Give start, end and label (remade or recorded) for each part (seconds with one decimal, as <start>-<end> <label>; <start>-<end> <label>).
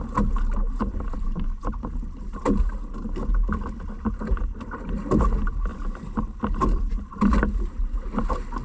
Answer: 0.0-5.7 recorded; 5.7-6.8 remade; 6.8-8.6 recorded